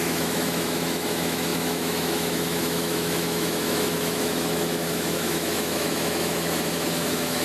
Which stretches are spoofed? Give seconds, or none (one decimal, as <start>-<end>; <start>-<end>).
0.0-7.4